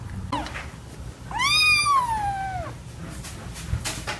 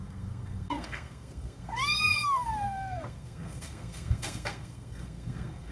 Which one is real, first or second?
first